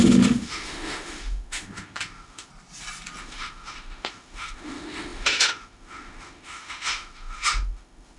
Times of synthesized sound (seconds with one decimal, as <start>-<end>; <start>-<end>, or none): 0.0-2.5; 3.2-8.2

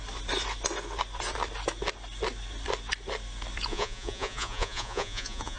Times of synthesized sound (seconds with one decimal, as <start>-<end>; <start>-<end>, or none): 3.7-5.6

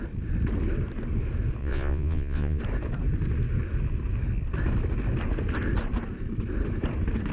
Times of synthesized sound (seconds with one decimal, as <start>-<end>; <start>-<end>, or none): 1.6-2.6

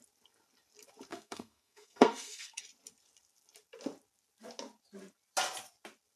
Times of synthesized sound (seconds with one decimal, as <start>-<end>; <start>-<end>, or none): 1.1-2.6

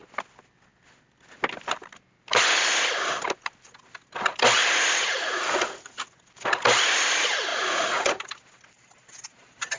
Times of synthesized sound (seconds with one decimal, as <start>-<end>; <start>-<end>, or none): 4.6-6.0; 7.5-8.2